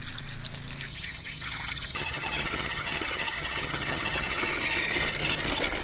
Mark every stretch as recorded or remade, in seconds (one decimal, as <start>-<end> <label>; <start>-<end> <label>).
0.0-0.9 recorded; 0.9-4.4 remade; 4.4-5.8 recorded